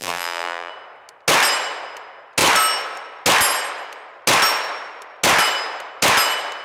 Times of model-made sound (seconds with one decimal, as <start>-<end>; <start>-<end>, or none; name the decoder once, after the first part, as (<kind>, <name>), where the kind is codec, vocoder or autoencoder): 0.0-0.7 (vocoder, BigVGAN v2)